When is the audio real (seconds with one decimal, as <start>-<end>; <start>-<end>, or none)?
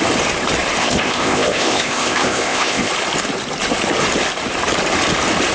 0.0-0.8; 2.9-5.5